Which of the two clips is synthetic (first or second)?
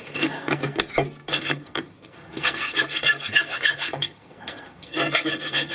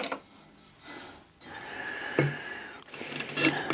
first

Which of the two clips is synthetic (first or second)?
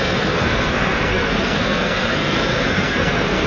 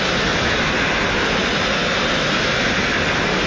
first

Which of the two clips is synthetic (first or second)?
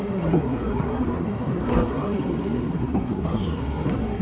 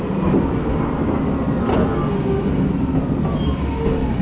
first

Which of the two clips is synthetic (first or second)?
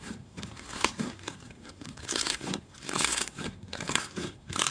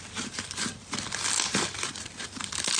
first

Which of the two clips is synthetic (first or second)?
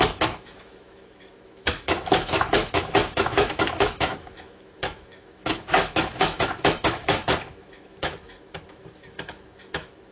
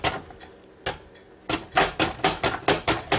first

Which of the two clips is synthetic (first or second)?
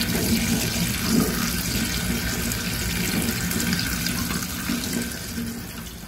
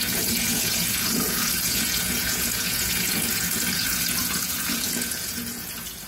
second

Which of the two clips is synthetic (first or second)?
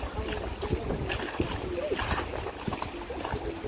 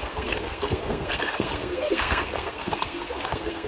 second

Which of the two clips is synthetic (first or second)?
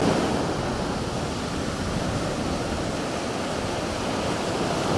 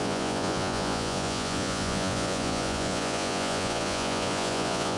second